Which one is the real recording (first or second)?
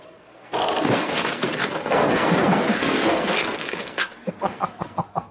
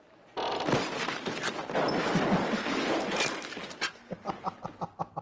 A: second